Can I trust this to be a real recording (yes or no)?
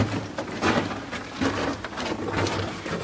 yes